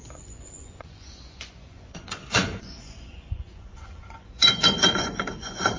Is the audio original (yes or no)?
no